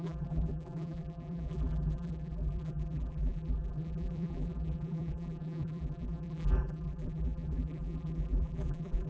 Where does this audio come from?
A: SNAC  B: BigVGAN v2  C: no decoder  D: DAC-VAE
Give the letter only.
B